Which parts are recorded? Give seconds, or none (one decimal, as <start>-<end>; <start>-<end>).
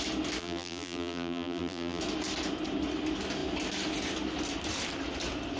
0.0-0.4; 2.0-5.6